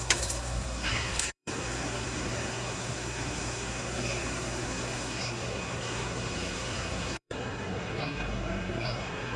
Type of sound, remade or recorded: remade